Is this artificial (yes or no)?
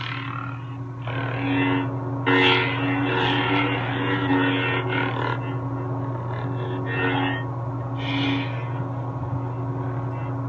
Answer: no